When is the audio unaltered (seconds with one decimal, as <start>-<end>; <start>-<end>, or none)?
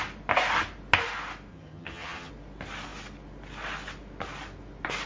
0.0-1.5; 2.3-5.1